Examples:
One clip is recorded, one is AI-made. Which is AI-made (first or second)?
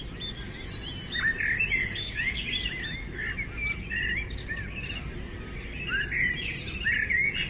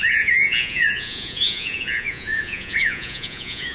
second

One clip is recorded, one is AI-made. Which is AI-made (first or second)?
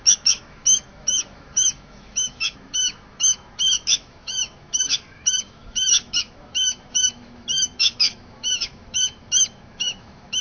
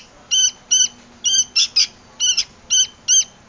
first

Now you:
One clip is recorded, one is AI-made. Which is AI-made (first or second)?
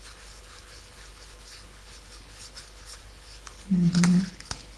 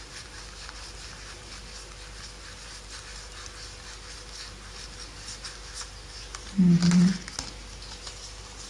first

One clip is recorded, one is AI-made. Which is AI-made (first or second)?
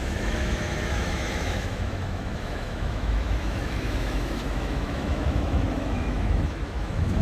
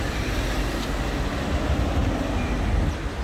first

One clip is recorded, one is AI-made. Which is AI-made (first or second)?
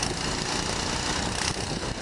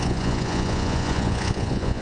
second